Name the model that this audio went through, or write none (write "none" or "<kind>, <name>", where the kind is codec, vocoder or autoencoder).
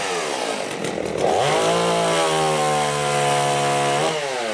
none